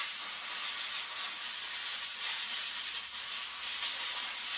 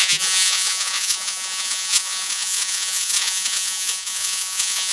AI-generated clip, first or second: second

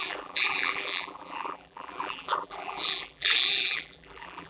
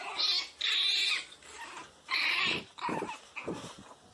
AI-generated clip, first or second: first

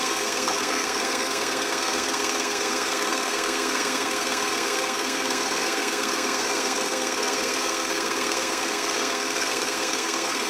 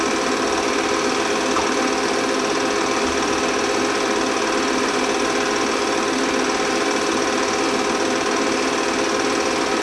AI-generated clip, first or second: first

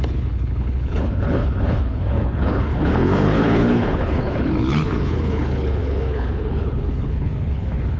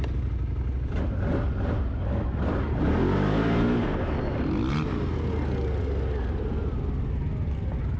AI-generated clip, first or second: first